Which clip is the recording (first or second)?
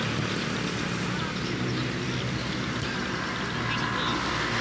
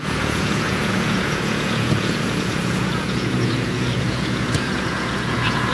first